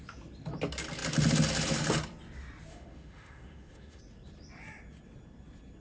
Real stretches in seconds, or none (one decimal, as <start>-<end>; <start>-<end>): 0.0-2.7; 4.0-5.8